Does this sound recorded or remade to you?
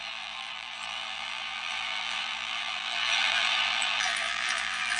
remade